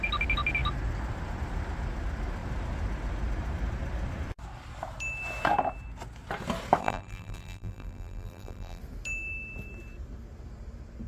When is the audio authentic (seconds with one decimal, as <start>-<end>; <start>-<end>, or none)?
0.0-6.8; 8.8-11.1